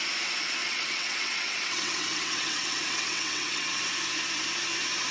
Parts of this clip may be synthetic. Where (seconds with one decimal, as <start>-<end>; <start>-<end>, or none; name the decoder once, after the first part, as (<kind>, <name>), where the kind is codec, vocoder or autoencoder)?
0.6-3.7 (vocoder, WaveNeXt)